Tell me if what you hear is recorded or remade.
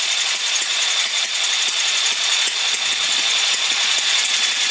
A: remade